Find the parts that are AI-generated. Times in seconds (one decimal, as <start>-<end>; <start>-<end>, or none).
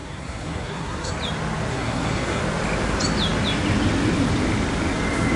0.0-1.1; 1.7-2.4